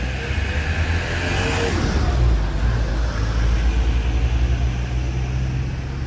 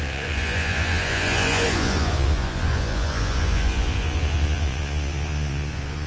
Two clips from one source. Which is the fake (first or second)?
second